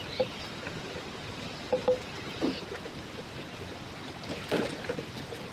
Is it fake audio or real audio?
real